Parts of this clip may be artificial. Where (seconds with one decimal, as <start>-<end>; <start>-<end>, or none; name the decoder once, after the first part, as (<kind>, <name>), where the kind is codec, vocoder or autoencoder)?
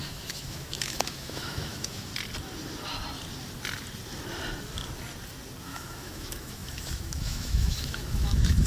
0.0-2.1 (autoencoder, DAC-VAE); 5.6-8.7